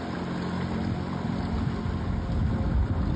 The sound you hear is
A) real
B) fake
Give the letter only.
A